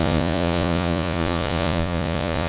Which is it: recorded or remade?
remade